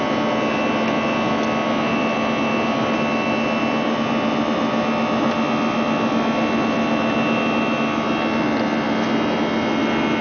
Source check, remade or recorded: recorded